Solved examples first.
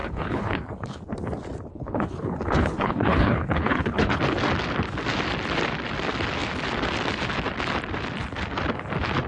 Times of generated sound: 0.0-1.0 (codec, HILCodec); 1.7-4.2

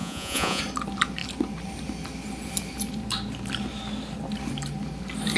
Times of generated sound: 0.0-0.6 (vocoder, Vocos)

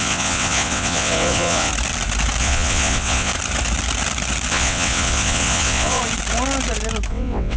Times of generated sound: 0.0-1.7 (vocoder, WaveNeXt); 2.4-3.3; 4.5-6.0; 7.1-7.6

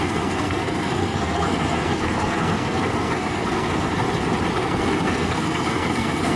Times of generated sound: 0.0-3.9 (codec, SNAC); 4.6-6.4